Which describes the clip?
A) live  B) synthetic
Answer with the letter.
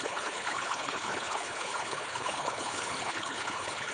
B